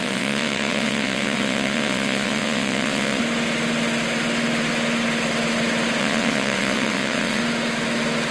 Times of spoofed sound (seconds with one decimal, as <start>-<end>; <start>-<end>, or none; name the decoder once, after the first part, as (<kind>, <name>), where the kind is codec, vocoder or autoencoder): 0.0-3.2 (vocoder, WaveNeXt); 6.0-7.4